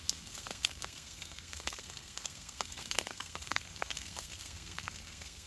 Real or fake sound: fake